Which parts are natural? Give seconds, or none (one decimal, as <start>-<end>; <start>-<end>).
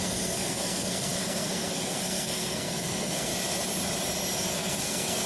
3.3-4.4